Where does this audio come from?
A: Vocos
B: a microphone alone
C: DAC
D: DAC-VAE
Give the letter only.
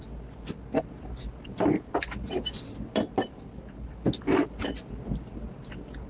B